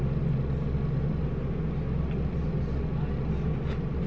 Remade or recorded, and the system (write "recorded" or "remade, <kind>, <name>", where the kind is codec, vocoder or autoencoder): recorded